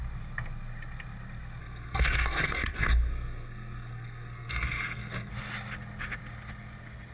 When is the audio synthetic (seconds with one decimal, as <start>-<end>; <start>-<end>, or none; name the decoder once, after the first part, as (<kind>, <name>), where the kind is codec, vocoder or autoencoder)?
1.6-5.3 (codec, SNAC)